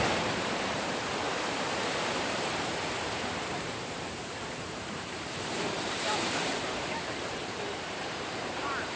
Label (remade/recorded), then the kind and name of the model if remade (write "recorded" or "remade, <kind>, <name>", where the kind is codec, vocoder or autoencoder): remade, vocoder, BigVGAN v2